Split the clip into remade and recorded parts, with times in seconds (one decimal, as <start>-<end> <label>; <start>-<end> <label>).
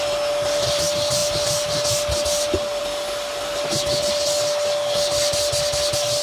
0.0-6.2 recorded